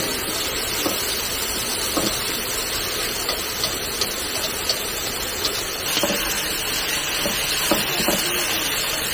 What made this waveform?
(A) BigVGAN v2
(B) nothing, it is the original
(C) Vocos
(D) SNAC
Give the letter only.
A